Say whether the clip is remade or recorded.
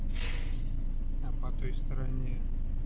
recorded